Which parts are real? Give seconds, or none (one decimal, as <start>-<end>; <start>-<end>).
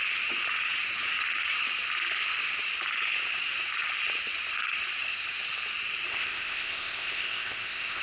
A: 0.0-6.1